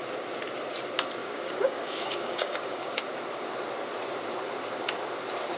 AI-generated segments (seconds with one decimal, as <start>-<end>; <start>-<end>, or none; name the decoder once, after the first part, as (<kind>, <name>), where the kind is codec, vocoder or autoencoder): 1.2-3.0 (codec, DAC)

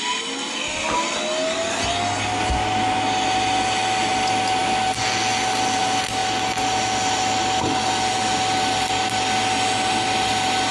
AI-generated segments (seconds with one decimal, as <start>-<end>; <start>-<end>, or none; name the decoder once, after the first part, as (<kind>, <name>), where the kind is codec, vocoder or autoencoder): none

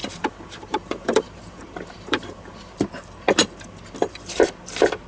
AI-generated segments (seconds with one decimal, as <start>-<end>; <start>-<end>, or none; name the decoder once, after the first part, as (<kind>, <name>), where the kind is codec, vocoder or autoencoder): 0.0-2.8 (vocoder, BigVGAN v2)

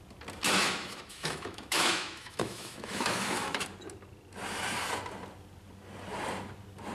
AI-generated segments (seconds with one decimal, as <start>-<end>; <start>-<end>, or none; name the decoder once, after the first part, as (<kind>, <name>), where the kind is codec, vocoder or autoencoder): 0.6-3.6 (autoencoder, DAC-VAE)

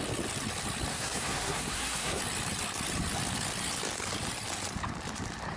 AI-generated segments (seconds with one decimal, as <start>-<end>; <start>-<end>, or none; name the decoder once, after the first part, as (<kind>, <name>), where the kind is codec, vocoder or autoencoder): 0.9-2.2 (codec, SNAC)

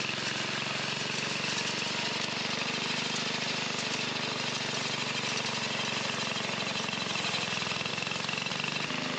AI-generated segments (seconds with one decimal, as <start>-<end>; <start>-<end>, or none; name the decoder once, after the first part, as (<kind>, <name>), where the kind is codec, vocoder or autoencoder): 7.9-8.5 (autoencoder, DAC-VAE)

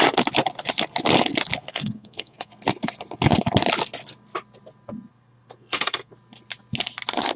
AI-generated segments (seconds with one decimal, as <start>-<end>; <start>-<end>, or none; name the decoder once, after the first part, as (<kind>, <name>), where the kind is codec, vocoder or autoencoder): 1.7-2.5 (codec, SNAC); 5.1-6.1

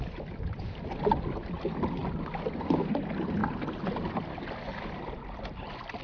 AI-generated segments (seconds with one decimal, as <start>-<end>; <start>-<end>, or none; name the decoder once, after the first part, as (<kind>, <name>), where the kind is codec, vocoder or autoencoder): none